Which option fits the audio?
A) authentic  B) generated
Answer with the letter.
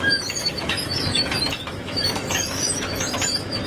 B